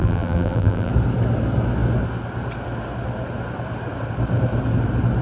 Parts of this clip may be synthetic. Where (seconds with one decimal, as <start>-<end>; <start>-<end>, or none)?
0.0-0.9